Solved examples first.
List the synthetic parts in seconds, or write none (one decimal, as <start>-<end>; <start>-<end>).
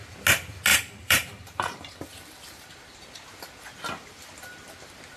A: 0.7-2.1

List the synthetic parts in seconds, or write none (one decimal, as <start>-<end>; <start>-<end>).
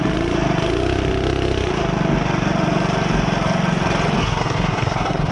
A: 4.2-5.3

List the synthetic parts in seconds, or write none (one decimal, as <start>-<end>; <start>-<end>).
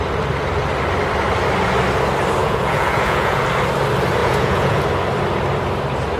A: 2.4-3.4; 4.2-4.8